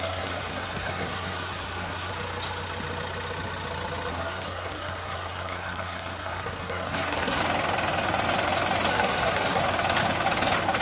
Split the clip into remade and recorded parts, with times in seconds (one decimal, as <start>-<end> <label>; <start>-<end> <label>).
0.0-2.1 remade; 2.1-4.1 recorded; 4.1-7.4 remade; 7.4-8.9 recorded; 8.9-9.6 remade; 9.6-10.8 recorded